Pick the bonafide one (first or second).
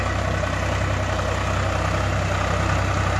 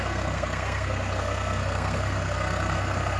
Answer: first